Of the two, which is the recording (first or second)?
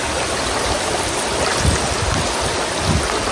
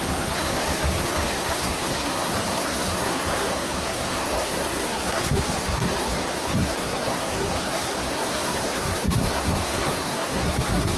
first